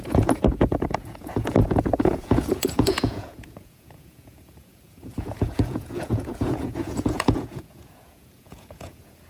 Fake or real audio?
fake